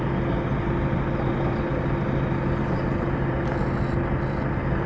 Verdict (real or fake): real